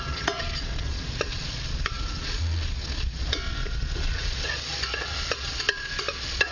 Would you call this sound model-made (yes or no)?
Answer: yes